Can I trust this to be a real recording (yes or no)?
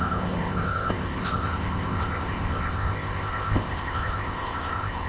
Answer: no